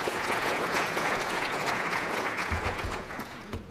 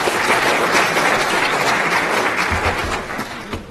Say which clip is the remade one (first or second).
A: first